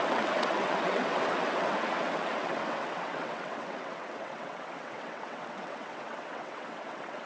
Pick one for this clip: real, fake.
fake